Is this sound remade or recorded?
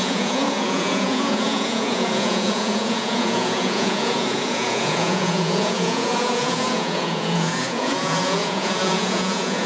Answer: remade